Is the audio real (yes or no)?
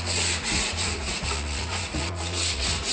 no